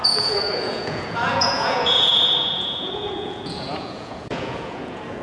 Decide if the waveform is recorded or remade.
remade